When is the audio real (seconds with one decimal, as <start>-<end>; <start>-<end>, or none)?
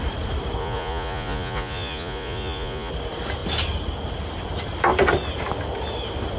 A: 0.0-0.6; 2.9-6.4